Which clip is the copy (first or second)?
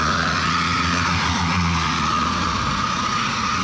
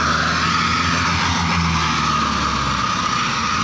first